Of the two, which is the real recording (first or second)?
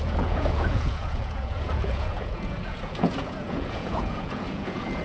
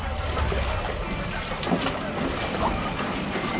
second